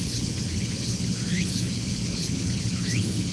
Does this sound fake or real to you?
fake